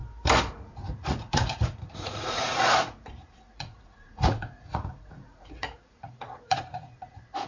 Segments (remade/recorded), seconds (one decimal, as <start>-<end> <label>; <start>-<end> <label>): 0.0-0.5 recorded; 0.5-7.5 remade